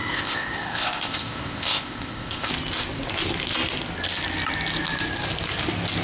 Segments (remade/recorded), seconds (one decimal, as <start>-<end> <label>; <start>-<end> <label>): 0.0-2.5 remade; 2.5-6.0 recorded